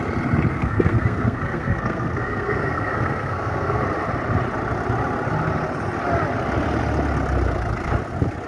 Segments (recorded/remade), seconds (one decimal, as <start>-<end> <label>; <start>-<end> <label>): 0.0-0.5 recorded; 0.5-3.8 remade; 3.8-8.5 recorded